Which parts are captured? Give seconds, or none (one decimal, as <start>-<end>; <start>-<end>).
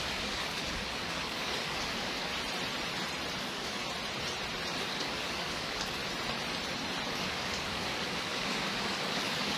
2.3-3.4; 3.8-4.8; 6.0-7.1